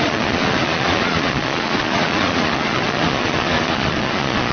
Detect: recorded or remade remade